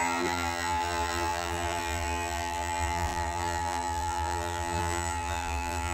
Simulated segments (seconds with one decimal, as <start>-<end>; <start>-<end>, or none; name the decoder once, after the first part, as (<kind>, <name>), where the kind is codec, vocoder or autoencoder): 0.0-5.9 (vocoder, BigVGAN v2)